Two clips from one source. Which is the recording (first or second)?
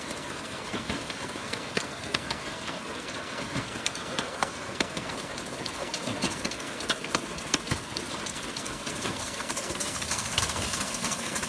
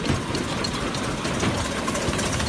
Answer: second